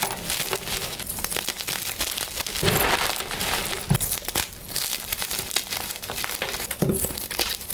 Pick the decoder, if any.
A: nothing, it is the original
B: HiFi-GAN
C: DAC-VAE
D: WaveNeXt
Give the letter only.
A